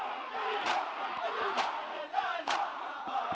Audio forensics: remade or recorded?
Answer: remade